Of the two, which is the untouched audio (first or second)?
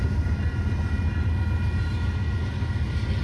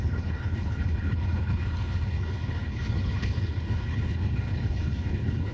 first